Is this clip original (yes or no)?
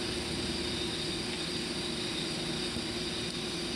yes